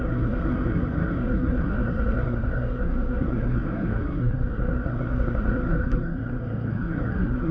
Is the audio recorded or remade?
remade